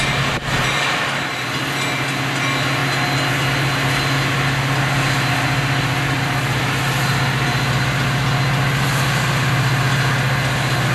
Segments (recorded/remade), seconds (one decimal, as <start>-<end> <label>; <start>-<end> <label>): 0.0-10.9 recorded